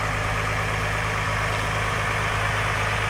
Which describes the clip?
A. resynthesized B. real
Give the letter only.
B